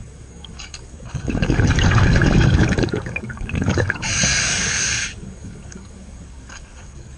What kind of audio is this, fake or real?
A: fake